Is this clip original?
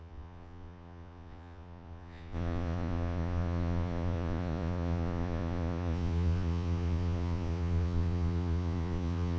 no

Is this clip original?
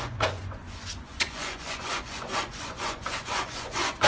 no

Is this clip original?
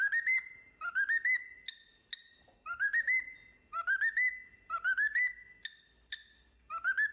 yes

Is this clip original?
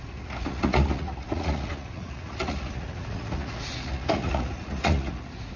no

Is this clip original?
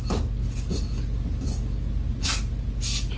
yes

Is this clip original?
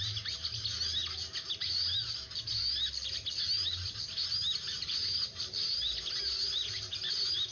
yes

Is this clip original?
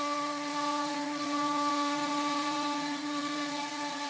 no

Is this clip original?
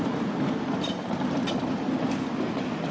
yes